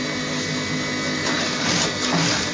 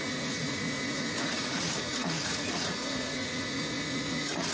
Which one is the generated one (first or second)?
second